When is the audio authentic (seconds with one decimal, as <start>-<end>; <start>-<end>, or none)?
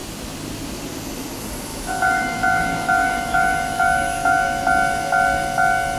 0.0-1.7; 4.6-6.0